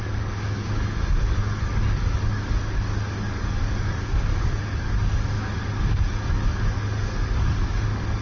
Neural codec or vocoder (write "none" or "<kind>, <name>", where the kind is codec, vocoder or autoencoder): codec, DAC